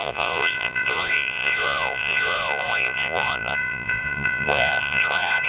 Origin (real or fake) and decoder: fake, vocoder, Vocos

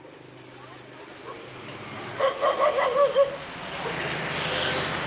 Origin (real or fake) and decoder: real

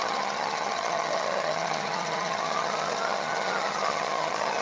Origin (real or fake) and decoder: fake, vocoder, HiFi-GAN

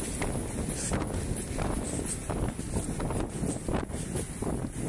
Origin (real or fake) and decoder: real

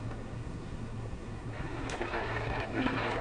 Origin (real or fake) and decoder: fake, codec, SNAC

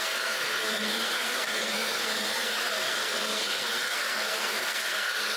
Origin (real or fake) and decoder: fake, codec, SNAC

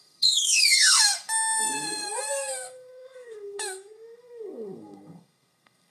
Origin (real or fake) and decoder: fake, codec, SNAC